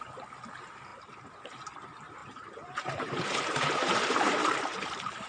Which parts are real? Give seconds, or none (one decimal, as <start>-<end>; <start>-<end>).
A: 0.0-0.9; 1.5-2.2